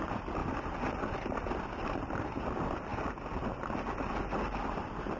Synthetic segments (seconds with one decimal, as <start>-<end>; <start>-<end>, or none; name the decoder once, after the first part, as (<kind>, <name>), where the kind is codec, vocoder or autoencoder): none